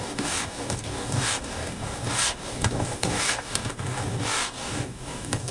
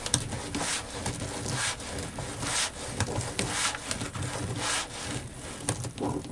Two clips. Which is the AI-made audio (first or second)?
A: first